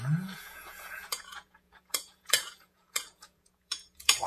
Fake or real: fake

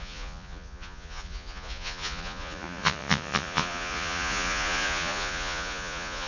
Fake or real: fake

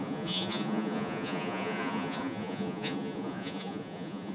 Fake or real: fake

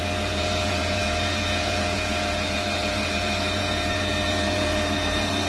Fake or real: fake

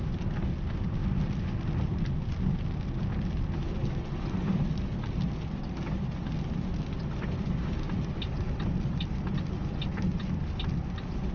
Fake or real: real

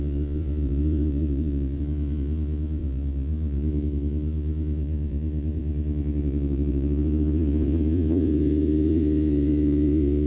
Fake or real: fake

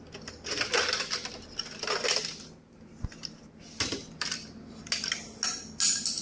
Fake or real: real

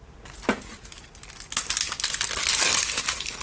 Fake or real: real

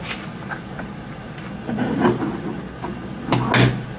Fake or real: real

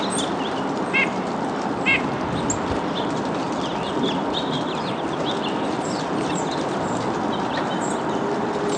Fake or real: real